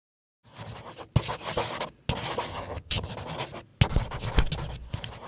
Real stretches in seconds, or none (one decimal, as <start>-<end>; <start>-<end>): 0.0-2.5; 3.1-5.3